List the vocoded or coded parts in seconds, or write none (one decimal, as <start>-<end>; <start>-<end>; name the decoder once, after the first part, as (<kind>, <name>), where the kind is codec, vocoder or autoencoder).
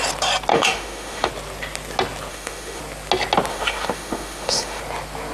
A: 0.5-1.3 (autoencoder, DAC-VAE); 2.3-2.8; 3.5-4.8